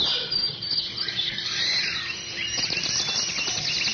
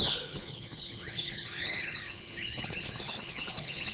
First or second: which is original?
first